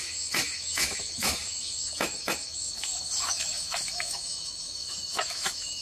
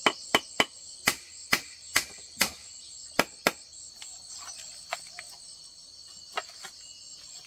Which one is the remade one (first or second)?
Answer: first